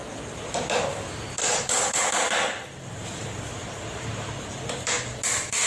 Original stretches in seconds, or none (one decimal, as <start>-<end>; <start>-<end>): 0.0-1.4; 2.1-5.7